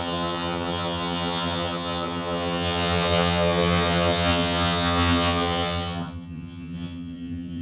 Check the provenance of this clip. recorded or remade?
remade